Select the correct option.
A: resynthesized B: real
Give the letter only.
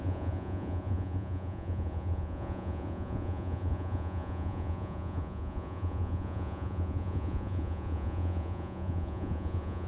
A